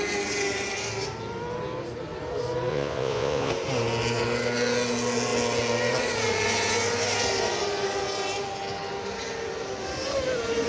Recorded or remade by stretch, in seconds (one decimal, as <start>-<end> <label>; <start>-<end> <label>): 0.0-2.7 recorded; 2.7-3.5 remade; 3.5-10.7 recorded